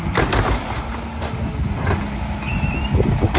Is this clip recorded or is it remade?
recorded